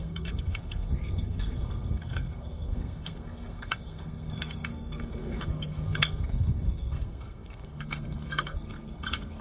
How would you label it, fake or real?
fake